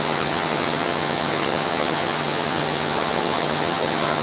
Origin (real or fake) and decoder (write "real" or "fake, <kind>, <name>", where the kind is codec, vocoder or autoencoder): fake, vocoder, HiFi-GAN